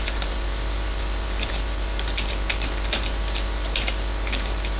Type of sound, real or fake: fake